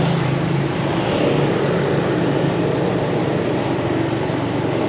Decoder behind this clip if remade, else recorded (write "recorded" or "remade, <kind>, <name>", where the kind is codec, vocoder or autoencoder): recorded